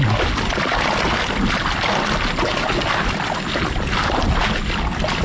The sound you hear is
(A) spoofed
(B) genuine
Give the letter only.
B